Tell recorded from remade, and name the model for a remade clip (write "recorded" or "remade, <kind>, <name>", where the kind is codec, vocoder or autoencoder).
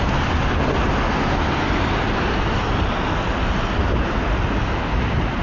recorded